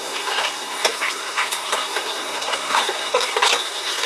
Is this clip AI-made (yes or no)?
yes